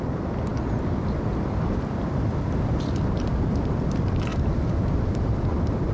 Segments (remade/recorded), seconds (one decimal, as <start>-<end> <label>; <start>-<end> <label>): 0.0-5.9 remade